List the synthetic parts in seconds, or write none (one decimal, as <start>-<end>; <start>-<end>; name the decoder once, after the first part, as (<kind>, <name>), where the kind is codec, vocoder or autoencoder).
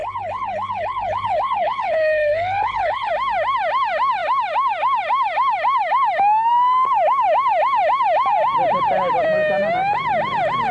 0.0-3.1 (codec, HILCodec)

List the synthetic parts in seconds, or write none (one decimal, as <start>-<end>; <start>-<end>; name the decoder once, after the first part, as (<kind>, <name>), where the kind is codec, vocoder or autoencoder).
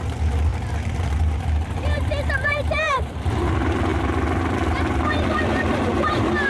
0.0-3.9 (vocoder, BigVGAN v2); 4.5-6.5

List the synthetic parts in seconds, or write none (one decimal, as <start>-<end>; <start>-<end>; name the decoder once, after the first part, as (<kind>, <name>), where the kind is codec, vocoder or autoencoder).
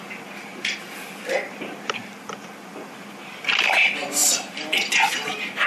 none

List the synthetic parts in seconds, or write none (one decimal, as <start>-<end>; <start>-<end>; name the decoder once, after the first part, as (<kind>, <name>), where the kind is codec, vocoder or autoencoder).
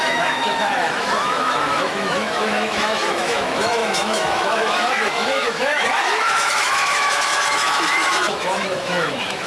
0.0-9.5 (autoencoder, DAC-VAE)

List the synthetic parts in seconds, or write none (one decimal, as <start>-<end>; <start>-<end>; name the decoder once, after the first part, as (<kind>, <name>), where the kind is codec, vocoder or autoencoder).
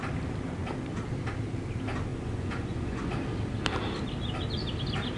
2.1-3.1 (vocoder, Vocos)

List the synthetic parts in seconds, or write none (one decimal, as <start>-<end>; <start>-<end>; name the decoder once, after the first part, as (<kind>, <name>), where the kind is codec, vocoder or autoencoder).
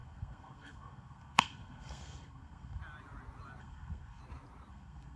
0.0-2.8 (codec, SNAC); 3.6-4.2; 4.7-5.2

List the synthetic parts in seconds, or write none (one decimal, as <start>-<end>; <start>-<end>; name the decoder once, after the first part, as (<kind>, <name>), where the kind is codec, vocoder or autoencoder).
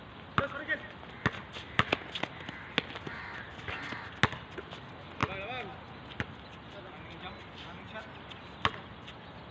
none